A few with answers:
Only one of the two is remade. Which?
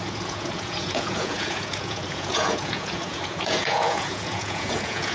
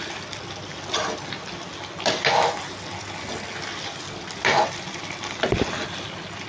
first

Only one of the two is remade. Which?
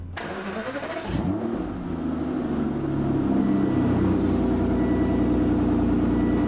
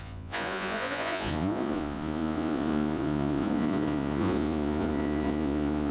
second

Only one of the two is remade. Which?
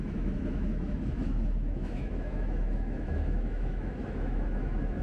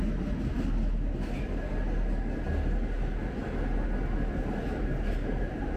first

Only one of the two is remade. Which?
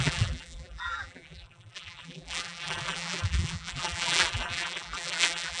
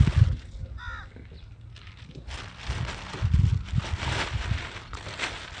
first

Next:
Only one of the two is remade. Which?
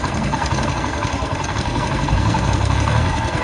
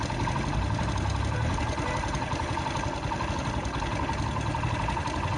first